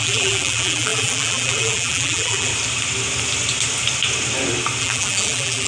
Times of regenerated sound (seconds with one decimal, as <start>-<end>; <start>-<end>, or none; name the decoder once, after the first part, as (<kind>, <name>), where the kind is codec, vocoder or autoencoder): 0.0-2.5 (vocoder, BigVGAN v2); 4.8-5.7